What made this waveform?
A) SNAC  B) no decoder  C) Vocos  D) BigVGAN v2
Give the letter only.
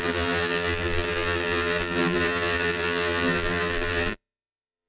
D